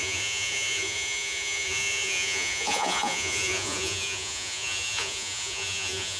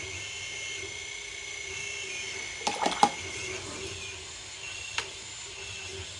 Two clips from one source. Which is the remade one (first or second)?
first